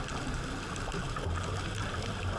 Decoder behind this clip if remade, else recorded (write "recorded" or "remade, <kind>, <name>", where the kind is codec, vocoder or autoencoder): recorded